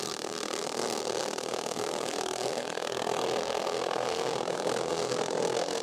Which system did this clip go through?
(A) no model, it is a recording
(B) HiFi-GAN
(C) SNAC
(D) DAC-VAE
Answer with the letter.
C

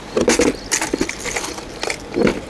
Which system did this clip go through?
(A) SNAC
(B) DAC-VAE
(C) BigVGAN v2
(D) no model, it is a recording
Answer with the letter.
D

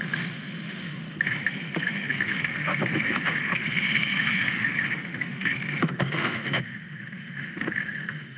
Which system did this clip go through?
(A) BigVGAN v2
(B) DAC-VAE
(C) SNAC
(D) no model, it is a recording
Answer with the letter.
B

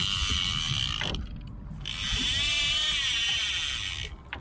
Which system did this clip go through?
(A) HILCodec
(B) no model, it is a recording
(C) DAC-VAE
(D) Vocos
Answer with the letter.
B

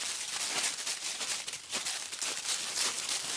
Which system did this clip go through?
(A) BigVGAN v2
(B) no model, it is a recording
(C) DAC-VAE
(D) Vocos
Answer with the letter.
B